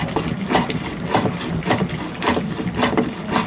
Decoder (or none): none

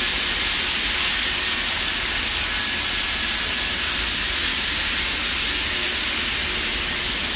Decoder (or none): none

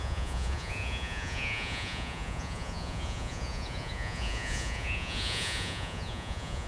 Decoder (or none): vocoder, Vocos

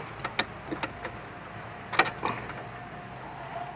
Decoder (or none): none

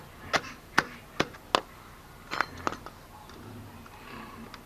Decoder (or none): none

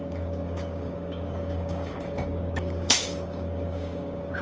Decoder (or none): codec, DAC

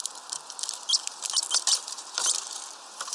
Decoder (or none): vocoder, BigVGAN v2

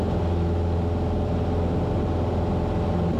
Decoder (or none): none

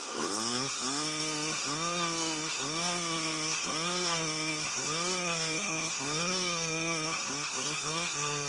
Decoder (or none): codec, SNAC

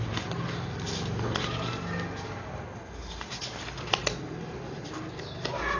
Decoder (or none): none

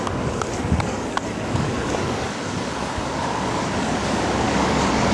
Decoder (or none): codec, DAC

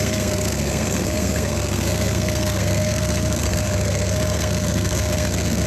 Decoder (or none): codec, SNAC